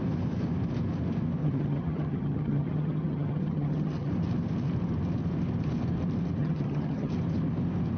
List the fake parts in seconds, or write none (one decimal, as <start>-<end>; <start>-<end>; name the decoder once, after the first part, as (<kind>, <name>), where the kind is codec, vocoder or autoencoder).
1.4-4.1 (vocoder, HiFi-GAN); 6.4-7.1